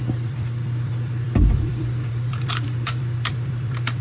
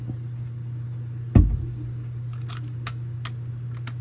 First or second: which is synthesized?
first